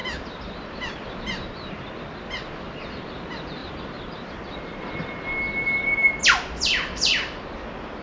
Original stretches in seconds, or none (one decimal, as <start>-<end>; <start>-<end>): 1.2-3.6; 4.9-8.0